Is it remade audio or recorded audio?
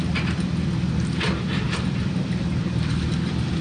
recorded